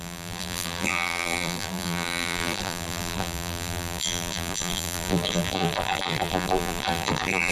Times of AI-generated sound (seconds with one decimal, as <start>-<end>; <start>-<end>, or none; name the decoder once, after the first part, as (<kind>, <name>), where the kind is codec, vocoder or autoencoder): 0.0-7.5 (vocoder, BigVGAN v2)

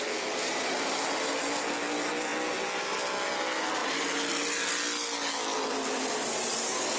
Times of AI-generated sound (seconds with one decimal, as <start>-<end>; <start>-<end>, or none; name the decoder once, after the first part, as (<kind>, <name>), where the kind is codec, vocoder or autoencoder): none

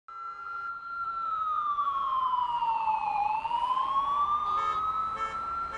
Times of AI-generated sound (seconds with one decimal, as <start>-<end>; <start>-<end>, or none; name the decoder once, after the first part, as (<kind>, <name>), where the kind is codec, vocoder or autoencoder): 0.4-3.9 (vocoder, BigVGAN v2)

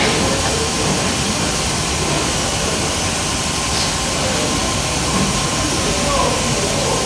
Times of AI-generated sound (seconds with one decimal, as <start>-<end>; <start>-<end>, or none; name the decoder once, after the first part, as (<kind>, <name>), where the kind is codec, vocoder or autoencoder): none

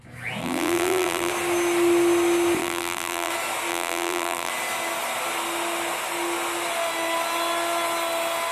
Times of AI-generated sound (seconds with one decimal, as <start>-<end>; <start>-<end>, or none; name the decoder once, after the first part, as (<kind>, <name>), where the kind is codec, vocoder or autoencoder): 0.4-1.3 (vocoder, BigVGAN v2); 2.6-3.3; 3.7-4.5

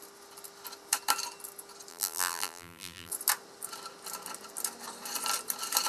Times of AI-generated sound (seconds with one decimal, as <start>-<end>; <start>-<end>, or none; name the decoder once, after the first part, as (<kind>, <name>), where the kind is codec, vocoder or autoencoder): 1.9-3.1 (vocoder, BigVGAN v2)